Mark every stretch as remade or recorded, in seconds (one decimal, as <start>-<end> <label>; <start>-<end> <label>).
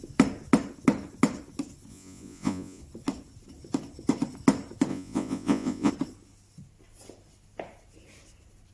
0.0-1.9 recorded; 1.9-2.8 remade; 2.8-4.9 recorded; 4.9-5.9 remade; 5.9-8.7 recorded